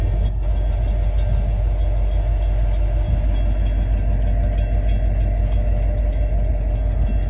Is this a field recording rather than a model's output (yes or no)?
yes